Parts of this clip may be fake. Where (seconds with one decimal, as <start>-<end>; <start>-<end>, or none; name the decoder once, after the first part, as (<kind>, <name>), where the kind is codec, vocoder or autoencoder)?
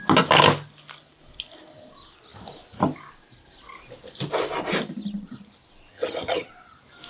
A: 5.9-6.5 (vocoder, HiFi-GAN)